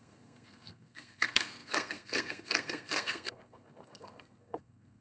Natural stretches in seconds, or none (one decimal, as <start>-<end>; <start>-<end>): none